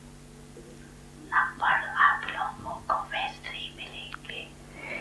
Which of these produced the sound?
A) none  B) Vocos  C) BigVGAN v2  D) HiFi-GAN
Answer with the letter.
A